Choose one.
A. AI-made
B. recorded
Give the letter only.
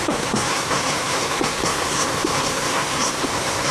A